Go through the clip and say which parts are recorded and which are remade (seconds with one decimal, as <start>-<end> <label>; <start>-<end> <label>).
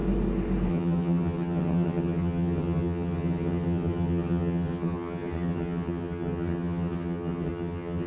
0.0-0.7 recorded; 0.7-8.1 remade